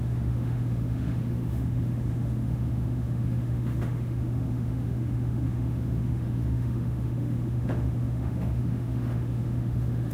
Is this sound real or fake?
fake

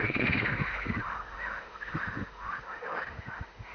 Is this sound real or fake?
fake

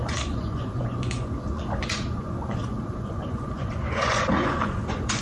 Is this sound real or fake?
fake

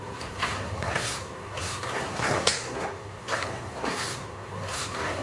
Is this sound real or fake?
fake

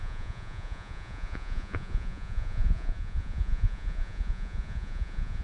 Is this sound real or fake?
fake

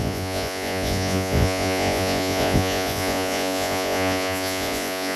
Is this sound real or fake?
fake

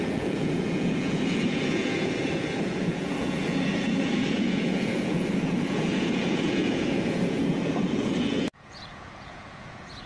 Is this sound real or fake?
fake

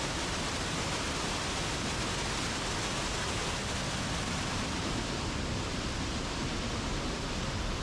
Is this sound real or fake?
real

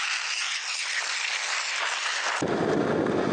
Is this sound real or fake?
real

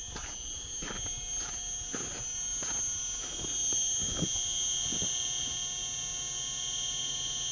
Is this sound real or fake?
real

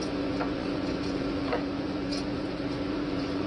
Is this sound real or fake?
fake